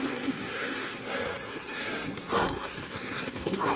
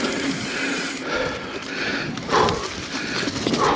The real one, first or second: second